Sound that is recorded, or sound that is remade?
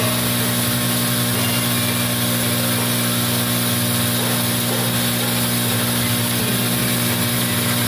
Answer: recorded